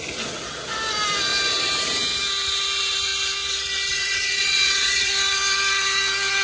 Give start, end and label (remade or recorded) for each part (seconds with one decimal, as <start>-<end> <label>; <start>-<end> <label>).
0.0-3.9 recorded; 3.9-5.1 remade; 5.1-6.4 recorded